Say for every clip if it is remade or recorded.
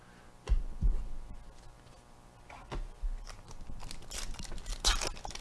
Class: recorded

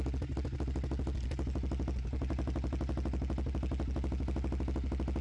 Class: recorded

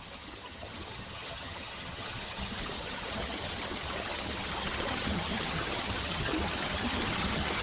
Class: remade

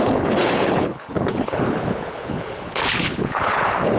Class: remade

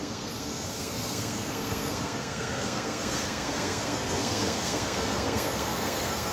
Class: remade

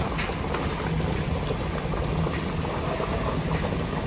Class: recorded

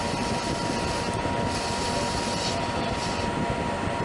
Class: recorded